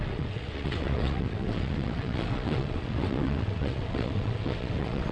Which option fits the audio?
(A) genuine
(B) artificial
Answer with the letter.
B